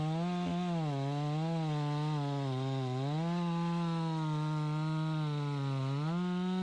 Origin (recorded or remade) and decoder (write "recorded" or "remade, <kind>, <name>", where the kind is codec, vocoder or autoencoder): recorded